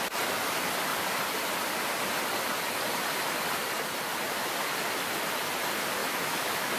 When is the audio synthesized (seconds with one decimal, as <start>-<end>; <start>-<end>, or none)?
6.0-6.8